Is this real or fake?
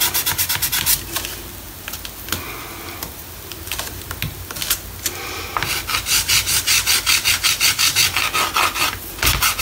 real